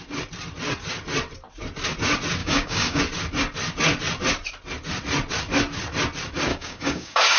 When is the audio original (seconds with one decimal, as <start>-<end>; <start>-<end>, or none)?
0.0-2.4; 3.0-6.5